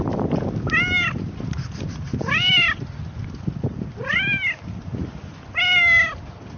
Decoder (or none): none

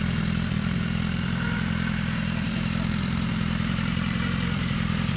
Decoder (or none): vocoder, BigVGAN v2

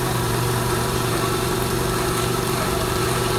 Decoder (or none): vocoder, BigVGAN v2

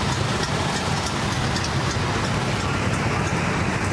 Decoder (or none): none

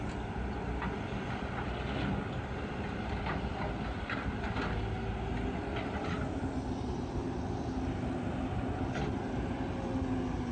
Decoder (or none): none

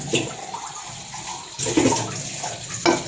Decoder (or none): none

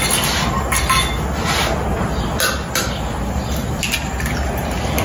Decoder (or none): none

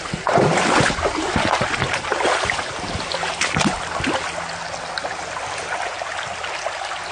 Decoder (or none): none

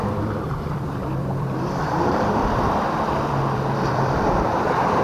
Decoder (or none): vocoder, BigVGAN v2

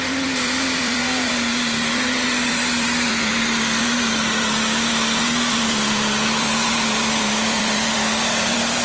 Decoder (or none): vocoder, BigVGAN v2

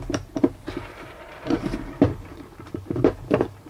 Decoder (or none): vocoder, BigVGAN v2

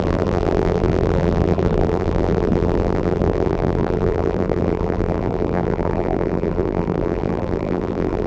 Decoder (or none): vocoder, BigVGAN v2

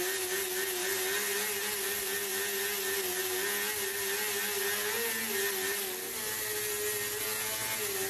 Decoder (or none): none